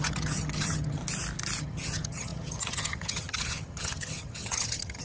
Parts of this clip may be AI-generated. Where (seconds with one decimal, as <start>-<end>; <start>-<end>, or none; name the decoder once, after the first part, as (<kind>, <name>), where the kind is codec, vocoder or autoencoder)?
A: 0.0-1.0 (vocoder, HiFi-GAN); 1.6-5.0